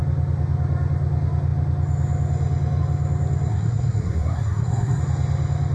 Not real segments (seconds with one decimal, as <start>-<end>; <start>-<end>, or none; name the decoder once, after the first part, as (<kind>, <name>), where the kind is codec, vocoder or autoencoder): 3.5-5.0 (codec, SNAC)